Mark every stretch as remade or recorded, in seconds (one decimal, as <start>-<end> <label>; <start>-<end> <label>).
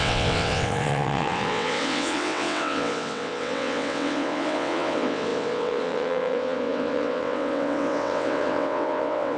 0.0-9.4 remade